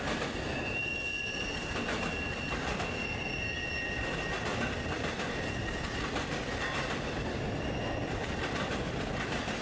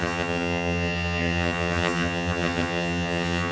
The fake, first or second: second